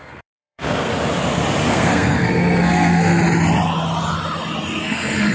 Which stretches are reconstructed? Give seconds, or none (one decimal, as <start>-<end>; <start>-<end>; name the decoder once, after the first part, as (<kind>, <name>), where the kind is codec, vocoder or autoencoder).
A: 0.0-0.9 (codec, SNAC); 1.7-3.2; 4.8-5.3